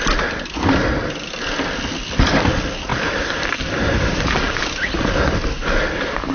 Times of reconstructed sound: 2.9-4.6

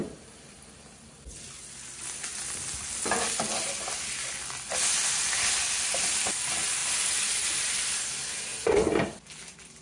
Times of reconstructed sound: 0.0-1.4; 6.8-7.9; 8.6-9.4

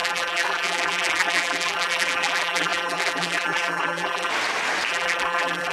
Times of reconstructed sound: 0.0-4.3; 4.9-5.7

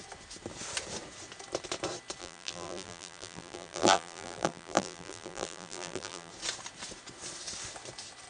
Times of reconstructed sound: 2.2-6.3

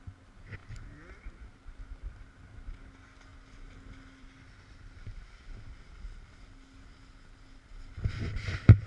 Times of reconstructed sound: 3.3-5.3

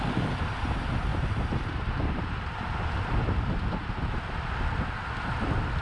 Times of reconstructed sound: 1.1-3.6